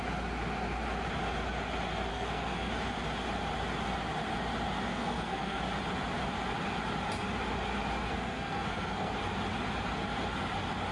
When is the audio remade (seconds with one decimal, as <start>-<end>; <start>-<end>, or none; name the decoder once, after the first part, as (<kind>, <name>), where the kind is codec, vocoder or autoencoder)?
2.1-2.7 (codec, SNAC); 4.9-5.6; 8.0-9.1